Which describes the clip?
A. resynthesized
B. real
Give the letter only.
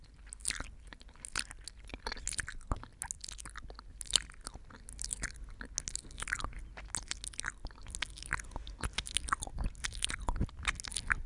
B